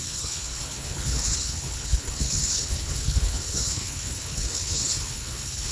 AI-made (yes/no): yes